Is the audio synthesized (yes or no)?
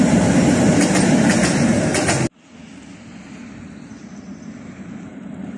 no